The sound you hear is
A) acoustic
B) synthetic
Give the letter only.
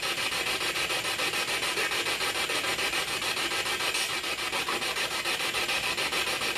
A